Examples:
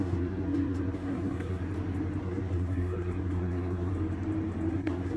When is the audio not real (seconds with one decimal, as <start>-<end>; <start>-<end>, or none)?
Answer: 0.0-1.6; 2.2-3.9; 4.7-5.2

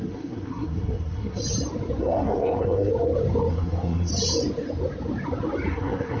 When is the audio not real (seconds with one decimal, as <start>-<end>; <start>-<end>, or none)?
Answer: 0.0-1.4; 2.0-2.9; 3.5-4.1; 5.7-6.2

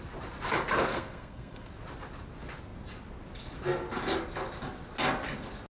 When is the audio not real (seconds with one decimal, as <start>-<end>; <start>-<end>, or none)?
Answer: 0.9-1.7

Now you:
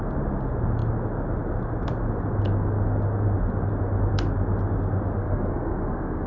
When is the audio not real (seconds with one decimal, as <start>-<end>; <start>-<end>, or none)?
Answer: 5.2-6.3

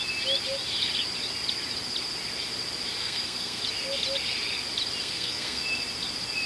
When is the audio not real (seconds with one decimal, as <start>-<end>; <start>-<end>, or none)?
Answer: 3.0-3.6; 5.0-5.6

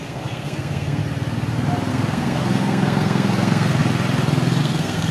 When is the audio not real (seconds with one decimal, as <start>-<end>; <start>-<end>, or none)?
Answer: 0.0-1.0; 1.9-3.8; 4.6-5.1